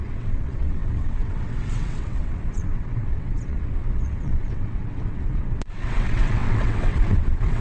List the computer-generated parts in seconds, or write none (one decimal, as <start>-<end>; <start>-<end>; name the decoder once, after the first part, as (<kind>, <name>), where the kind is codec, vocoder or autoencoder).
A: 0.0-7.6 (vocoder, WaveNeXt)